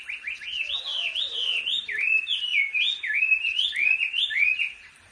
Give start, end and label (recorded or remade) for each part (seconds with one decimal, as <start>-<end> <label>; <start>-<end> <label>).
0.0-0.9 remade; 0.9-1.6 recorded; 1.6-2.5 remade; 2.5-3.2 recorded; 3.2-5.1 remade